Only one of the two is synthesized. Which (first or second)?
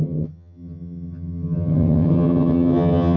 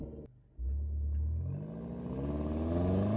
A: first